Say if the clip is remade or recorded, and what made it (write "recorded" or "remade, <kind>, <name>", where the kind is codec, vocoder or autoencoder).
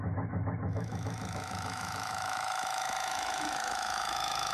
remade, autoencoder, DAC-VAE